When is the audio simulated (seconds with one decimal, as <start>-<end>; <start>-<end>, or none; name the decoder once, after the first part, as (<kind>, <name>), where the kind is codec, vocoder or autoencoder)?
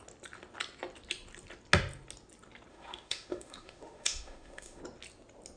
2.7-4.8 (autoencoder, DAC-VAE)